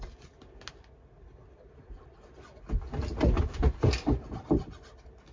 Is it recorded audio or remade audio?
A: recorded